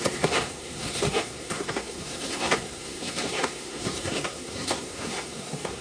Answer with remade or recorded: remade